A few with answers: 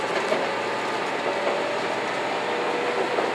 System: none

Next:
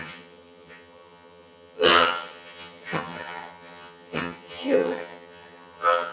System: vocoder, HiFi-GAN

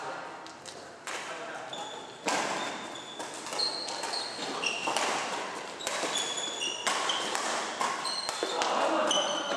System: none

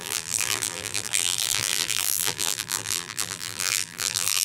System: vocoder, BigVGAN v2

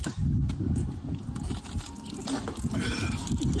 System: none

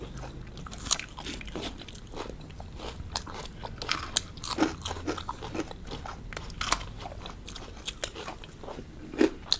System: none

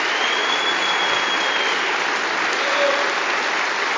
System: none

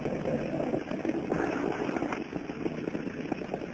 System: none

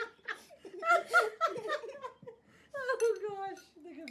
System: none